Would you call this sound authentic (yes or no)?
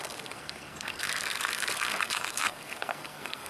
no